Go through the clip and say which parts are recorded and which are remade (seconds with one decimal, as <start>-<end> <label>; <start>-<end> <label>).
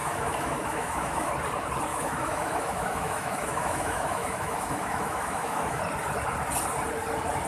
0.0-1.3 remade; 1.3-1.9 recorded; 1.9-5.8 remade; 5.8-7.5 recorded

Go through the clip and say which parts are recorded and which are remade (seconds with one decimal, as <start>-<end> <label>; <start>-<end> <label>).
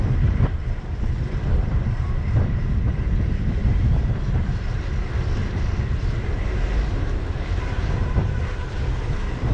0.0-3.6 recorded; 3.6-4.6 remade; 4.6-7.8 recorded; 7.8-8.4 remade; 8.4-9.5 recorded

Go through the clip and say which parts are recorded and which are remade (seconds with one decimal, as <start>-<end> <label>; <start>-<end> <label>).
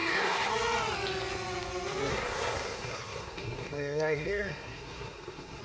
0.0-0.5 remade; 0.5-2.1 recorded; 2.1-5.6 remade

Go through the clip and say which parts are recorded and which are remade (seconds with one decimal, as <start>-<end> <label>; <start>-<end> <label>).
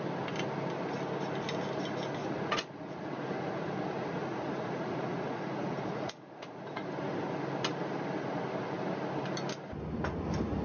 0.0-2.2 recorded; 2.2-6.9 remade; 6.9-10.6 recorded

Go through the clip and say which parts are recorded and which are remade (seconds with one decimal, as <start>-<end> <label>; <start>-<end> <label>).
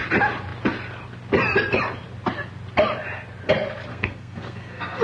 0.0-3.9 recorded; 3.9-5.0 remade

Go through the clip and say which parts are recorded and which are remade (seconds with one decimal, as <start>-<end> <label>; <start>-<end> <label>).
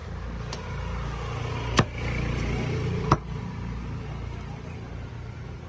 0.0-5.7 recorded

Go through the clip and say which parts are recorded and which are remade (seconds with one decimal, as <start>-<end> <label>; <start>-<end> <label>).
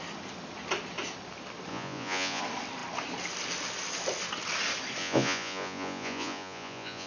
0.0-1.7 recorded; 1.7-2.4 remade; 2.4-5.0 recorded; 5.0-7.1 remade